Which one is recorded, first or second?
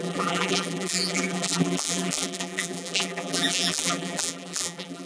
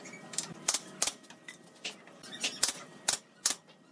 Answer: second